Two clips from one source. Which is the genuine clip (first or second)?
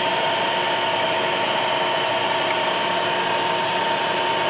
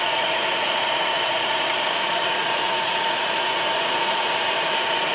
first